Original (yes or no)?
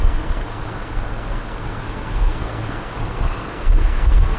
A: no